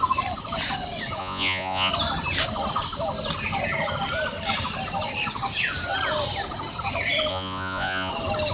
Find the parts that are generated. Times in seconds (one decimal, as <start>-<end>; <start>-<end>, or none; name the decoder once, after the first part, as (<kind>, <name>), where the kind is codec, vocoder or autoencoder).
1.2-1.9 (vocoder, Vocos); 7.3-8.1